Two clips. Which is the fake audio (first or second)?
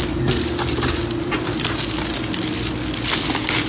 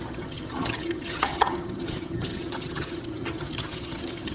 second